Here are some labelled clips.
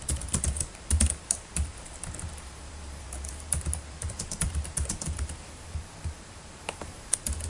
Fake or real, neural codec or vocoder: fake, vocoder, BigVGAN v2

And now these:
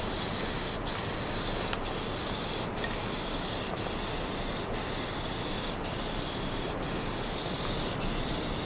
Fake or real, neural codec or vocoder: real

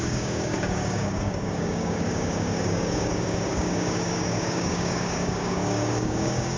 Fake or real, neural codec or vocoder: fake, codec, DAC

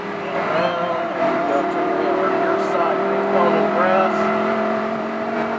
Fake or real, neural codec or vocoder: fake, vocoder, BigVGAN v2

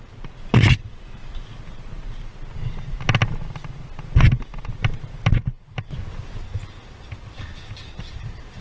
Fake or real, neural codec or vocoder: real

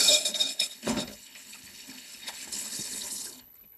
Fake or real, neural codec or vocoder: fake, codec, HILCodec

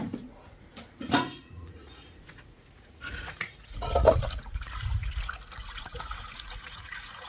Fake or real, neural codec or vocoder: fake, vocoder, Vocos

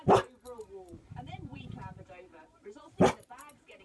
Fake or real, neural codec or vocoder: fake, vocoder, BigVGAN v2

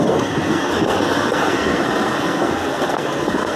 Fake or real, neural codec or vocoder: fake, codec, SNAC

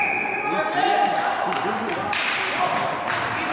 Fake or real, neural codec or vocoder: real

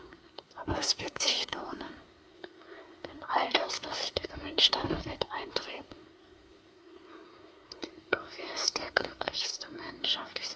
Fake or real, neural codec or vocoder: fake, codec, SNAC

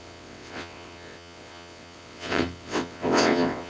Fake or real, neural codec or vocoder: fake, vocoder, WaveNeXt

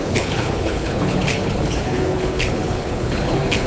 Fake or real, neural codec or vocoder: fake, codec, HILCodec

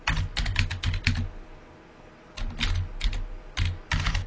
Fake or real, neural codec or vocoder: real